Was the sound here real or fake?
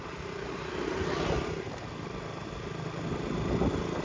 real